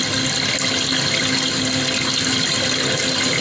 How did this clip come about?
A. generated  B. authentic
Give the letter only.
B